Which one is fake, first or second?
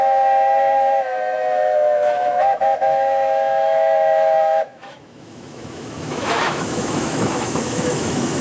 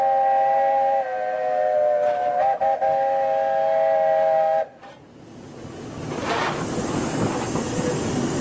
first